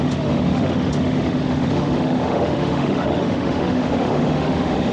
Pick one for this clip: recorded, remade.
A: remade